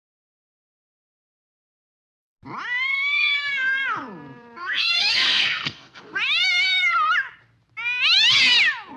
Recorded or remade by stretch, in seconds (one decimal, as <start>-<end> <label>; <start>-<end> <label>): 0.0-2.9 recorded; 2.9-3.5 remade; 3.5-4.6 recorded; 4.6-6.0 remade; 6.0-9.0 recorded